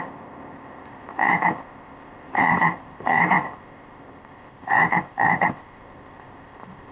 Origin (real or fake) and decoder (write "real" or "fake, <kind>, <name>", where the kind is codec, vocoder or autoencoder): fake, codec, ZipCodec